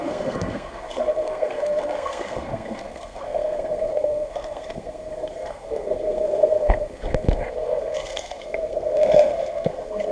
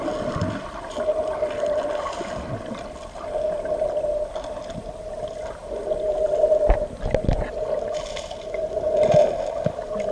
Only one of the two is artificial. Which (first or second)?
first